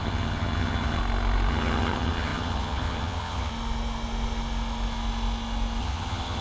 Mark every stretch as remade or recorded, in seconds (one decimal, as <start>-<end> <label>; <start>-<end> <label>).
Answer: 0.0-1.0 remade; 1.0-1.5 recorded; 1.5-3.5 remade; 3.5-5.8 recorded; 5.8-6.4 remade